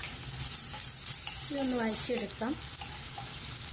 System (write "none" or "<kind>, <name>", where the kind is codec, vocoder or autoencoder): none